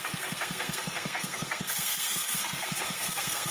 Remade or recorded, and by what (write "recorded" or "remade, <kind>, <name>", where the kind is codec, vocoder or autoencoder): remade, codec, SNAC